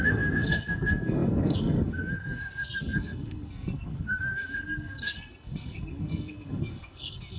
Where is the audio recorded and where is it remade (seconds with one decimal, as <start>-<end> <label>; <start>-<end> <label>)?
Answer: 0.0-7.4 remade